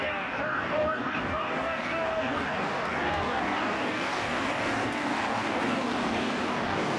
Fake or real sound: fake